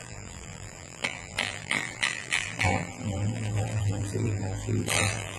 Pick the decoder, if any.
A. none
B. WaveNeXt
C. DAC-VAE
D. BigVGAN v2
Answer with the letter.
D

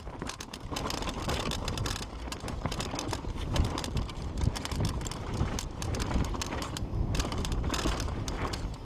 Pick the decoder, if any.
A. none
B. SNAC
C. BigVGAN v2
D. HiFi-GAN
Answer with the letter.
C